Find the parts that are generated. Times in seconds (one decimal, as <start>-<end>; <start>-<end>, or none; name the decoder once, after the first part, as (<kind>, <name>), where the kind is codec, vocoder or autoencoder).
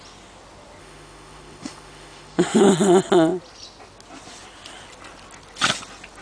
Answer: 0.8-2.7 (autoencoder, DAC-VAE)